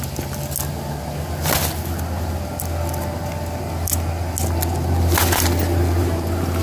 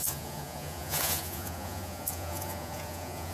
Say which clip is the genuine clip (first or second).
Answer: first